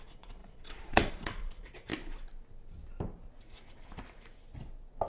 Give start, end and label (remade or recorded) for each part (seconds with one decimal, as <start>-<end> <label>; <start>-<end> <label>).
0.0-1.9 remade; 1.9-5.1 recorded